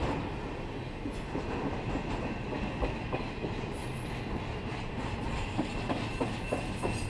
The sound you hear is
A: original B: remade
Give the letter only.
A